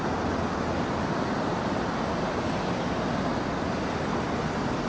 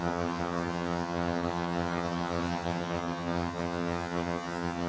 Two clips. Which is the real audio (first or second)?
first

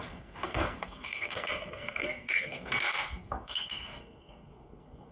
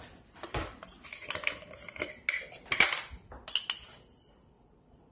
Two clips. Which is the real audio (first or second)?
second